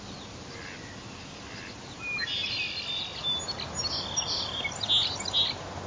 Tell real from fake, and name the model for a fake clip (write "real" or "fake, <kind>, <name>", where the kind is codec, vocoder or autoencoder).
real